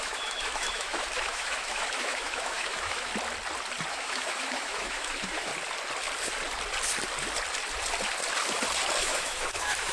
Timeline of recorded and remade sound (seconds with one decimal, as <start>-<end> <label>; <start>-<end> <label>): 0.0-3.1 remade; 3.1-3.9 recorded; 3.9-5.5 remade; 5.5-9.0 recorded; 9.0-9.9 remade